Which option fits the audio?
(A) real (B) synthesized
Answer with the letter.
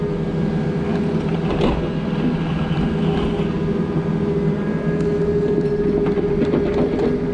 A